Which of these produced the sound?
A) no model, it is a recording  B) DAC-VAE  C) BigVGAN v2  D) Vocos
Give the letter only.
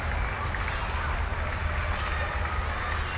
A